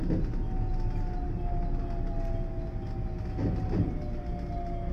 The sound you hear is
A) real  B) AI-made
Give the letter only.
A